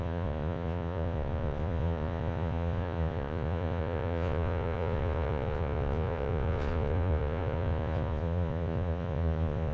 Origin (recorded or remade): remade